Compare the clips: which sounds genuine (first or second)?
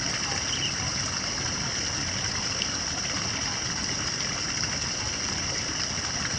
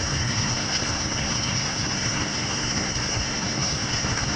first